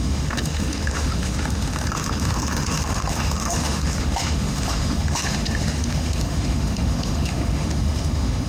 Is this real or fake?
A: fake